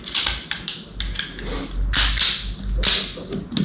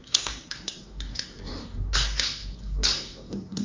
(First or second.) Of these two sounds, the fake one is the second